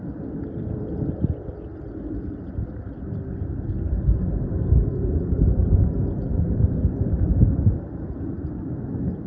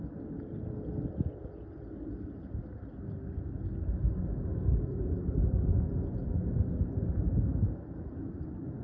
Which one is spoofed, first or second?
first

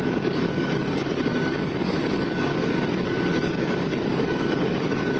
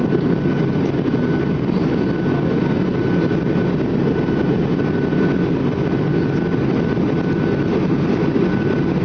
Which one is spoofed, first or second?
first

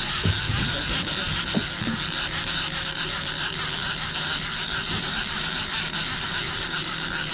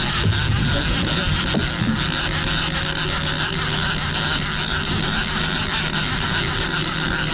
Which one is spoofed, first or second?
first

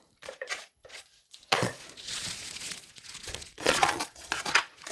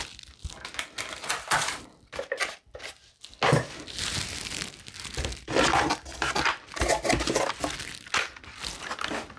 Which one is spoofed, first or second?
first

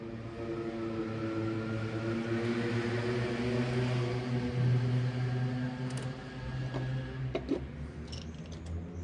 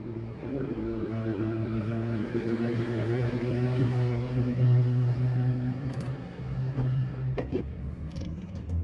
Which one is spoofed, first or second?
second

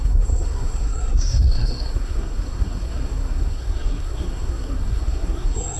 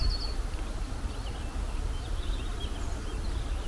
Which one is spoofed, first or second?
first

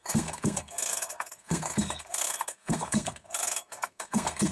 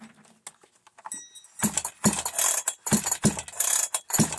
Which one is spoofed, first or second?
first